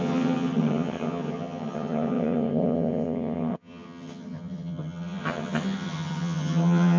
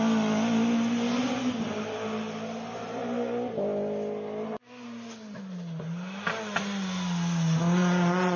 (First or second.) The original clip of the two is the second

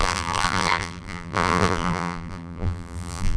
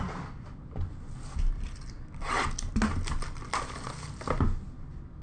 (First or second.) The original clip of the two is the second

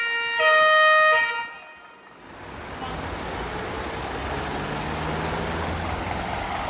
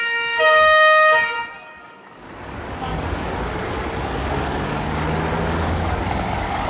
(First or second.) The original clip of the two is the first